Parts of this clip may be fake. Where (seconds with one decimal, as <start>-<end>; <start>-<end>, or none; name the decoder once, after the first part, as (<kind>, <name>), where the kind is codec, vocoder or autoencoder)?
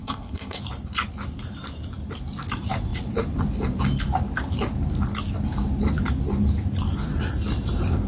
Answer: 0.0-0.6 (codec, SNAC)